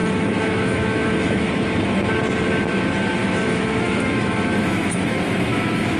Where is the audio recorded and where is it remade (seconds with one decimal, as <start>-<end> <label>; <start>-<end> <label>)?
0.0-1.5 remade; 1.5-3.2 recorded; 3.2-6.0 remade